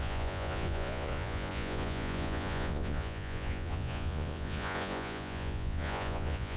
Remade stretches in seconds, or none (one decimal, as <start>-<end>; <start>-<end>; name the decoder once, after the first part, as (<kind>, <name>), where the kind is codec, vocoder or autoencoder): 0.0-6.6 (vocoder, Vocos)